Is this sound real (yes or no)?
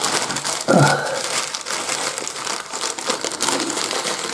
yes